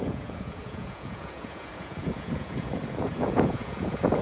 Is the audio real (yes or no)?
no